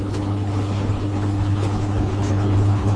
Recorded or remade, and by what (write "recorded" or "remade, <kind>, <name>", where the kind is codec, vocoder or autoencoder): remade, codec, HILCodec